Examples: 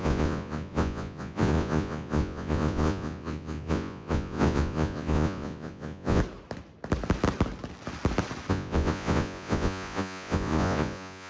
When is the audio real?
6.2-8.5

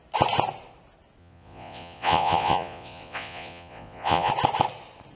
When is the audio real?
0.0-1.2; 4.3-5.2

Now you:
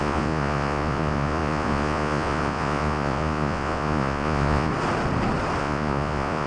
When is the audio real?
4.7-5.6

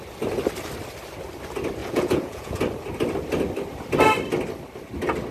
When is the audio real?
0.0-1.8; 2.6-5.3